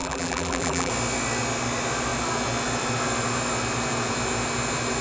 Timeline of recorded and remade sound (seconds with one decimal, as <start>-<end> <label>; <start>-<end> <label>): 0.0-0.9 remade; 0.9-5.0 recorded